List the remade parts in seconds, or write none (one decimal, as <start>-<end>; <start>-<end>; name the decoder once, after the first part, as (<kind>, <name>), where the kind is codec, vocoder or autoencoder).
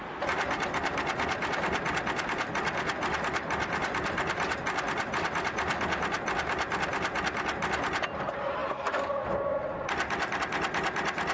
none